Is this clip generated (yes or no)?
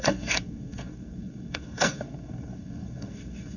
yes